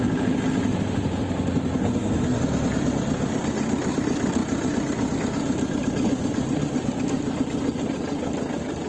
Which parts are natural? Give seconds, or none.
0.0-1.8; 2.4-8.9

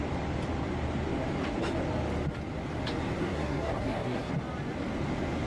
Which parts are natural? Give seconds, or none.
0.0-3.2; 4.3-5.5